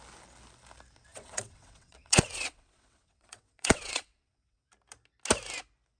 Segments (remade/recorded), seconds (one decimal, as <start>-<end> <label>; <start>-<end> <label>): 0.0-1.1 recorded; 1.1-4.7 remade; 4.7-6.0 recorded